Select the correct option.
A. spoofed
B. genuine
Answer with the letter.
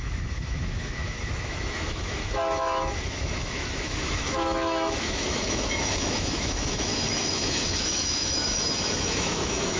A